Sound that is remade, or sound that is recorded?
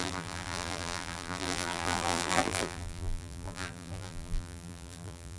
remade